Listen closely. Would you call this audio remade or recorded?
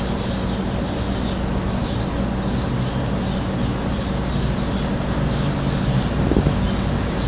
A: recorded